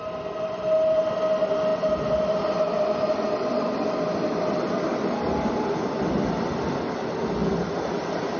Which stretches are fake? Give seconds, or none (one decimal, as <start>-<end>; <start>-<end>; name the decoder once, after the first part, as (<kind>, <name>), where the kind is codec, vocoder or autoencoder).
none